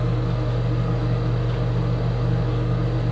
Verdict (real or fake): real